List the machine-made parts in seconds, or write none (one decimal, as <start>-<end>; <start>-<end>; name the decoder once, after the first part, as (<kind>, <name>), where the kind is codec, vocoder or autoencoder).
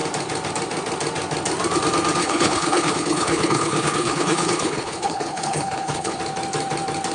2.2-6.2 (codec, HILCodec)